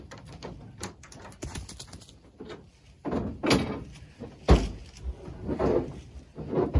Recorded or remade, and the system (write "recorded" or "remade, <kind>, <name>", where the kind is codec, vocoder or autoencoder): recorded